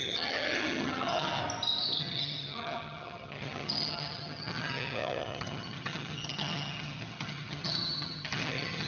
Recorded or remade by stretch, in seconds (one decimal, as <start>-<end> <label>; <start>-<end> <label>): 0.0-1.4 remade; 1.4-2.0 recorded; 2.0-8.9 remade

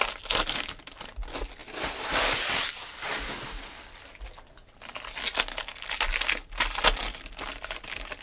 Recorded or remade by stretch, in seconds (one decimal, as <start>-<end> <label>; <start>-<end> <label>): 0.0-8.2 recorded

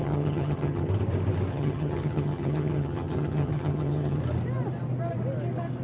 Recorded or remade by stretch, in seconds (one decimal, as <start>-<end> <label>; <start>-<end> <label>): 0.0-0.9 remade; 0.9-1.5 recorded; 1.5-4.2 remade; 4.2-5.8 recorded

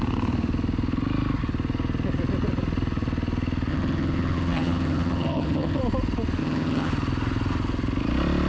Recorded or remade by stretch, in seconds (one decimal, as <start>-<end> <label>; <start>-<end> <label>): 0.0-3.7 recorded; 3.7-5.8 remade; 5.8-6.4 recorded; 6.4-6.9 remade; 6.9-8.5 recorded